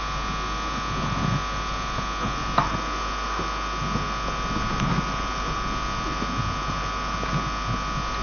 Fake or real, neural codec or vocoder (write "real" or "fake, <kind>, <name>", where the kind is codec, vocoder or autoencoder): real